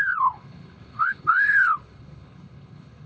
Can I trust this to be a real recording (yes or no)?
no